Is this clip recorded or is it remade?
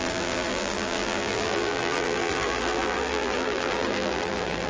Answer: remade